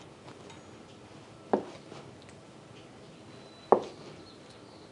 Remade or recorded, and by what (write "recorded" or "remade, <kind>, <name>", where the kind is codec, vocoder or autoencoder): recorded